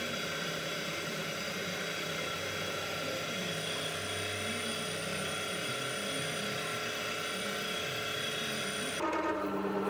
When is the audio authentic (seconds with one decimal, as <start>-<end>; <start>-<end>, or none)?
0.0-5.1; 5.7-9.9